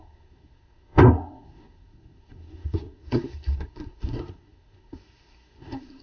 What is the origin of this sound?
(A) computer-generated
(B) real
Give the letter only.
A